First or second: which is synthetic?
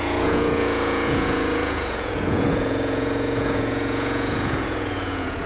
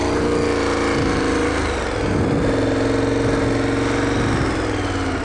first